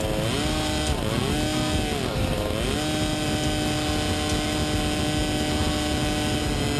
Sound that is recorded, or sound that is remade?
recorded